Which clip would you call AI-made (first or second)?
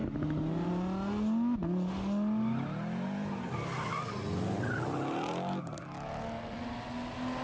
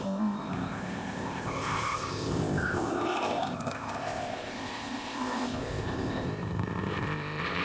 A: second